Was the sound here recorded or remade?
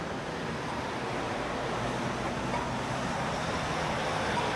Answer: recorded